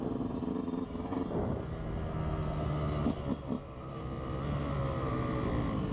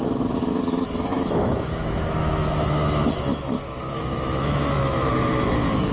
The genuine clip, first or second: first